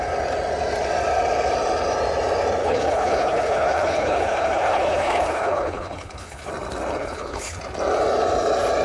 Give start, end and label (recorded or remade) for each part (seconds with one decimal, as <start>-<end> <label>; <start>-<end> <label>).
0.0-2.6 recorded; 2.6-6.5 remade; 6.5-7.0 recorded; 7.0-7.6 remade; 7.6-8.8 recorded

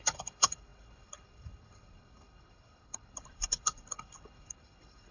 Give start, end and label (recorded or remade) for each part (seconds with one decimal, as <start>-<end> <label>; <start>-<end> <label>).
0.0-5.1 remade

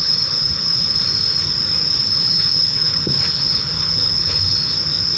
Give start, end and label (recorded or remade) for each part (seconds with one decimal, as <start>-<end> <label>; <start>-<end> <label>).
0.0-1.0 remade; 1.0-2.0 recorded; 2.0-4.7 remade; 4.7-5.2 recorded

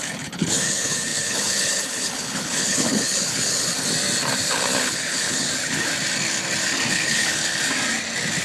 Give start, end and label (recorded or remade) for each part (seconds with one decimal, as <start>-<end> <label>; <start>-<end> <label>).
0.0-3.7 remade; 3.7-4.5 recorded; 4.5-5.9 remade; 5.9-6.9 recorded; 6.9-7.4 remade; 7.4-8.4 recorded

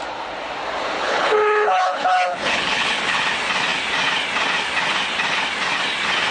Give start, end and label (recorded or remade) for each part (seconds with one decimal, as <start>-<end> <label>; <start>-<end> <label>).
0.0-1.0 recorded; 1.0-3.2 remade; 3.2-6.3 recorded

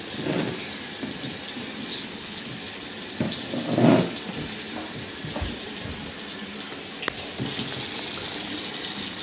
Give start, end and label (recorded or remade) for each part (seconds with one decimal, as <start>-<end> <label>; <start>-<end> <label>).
0.0-1.9 recorded; 1.9-2.4 remade; 2.4-9.2 recorded